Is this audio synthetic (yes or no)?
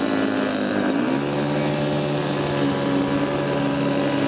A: no